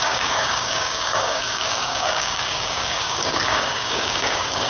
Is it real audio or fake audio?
fake